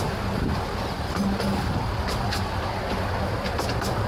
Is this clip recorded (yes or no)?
yes